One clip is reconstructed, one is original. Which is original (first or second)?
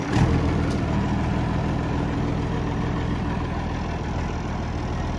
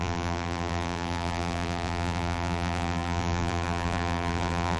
first